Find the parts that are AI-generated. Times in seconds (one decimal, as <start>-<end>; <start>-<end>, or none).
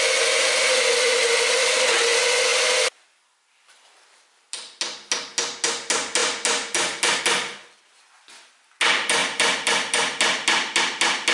1.3-2.0; 2.5-4.4